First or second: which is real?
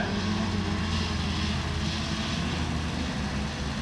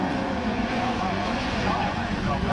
first